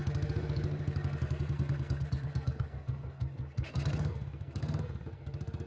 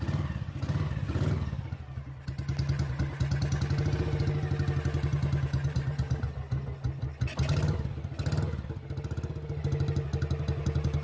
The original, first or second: second